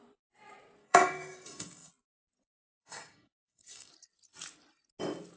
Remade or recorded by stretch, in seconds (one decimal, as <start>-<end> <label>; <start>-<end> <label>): 0.0-0.8 recorded; 0.8-1.9 remade; 1.9-2.7 recorded; 2.7-3.9 remade; 3.9-5.4 recorded